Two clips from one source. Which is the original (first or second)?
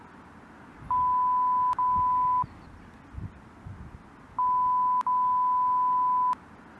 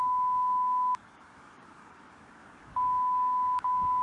first